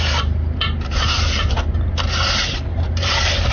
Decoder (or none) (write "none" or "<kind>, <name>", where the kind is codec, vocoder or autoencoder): vocoder, BigVGAN v2